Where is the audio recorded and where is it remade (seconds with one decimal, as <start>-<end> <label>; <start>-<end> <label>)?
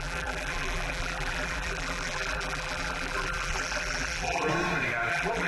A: 0.0-4.5 remade; 4.5-5.1 recorded; 5.1-5.5 remade